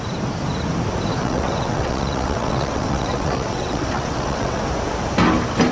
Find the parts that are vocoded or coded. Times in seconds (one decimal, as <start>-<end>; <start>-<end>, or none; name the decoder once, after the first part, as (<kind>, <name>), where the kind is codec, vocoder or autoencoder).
1.2-4.6 (vocoder, WaveNeXt)

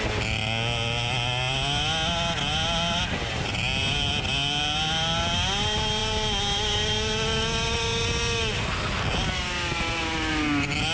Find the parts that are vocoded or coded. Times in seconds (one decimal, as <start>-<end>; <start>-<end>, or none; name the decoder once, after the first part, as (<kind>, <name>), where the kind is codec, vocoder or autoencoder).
none

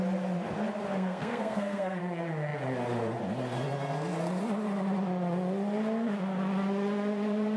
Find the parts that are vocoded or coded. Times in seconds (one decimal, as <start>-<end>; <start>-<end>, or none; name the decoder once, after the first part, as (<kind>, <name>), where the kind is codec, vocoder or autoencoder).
0.9-2.0 (codec, SNAC)

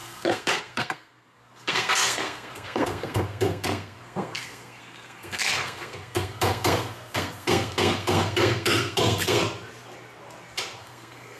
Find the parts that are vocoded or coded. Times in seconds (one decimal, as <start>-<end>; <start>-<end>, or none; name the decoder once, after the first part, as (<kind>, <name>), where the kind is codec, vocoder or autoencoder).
0.0-9.4 (codec, SNAC); 10.8-11.4

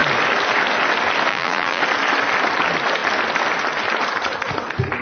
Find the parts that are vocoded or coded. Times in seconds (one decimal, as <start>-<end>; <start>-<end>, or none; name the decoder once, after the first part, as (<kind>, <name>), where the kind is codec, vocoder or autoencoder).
1.3-1.8 (vocoder, BigVGAN v2)

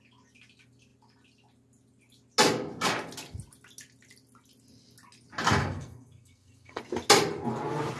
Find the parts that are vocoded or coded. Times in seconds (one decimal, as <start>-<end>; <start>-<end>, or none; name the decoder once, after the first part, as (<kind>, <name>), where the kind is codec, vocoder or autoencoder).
5.6-6.8 (codec, SNAC)

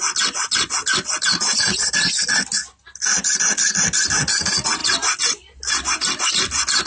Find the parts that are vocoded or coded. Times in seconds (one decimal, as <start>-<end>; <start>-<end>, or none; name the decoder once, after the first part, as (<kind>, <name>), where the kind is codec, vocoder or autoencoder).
none